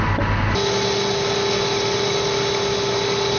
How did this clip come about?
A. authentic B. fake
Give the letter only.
A